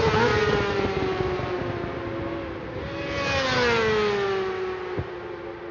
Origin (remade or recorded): recorded